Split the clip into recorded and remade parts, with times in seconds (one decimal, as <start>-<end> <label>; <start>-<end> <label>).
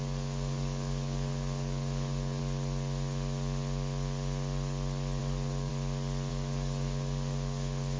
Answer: 0.0-2.4 remade; 2.4-5.2 recorded; 5.2-5.7 remade; 5.7-6.3 recorded; 6.3-8.0 remade